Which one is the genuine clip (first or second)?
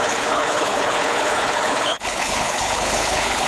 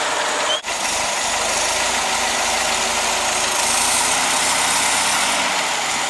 second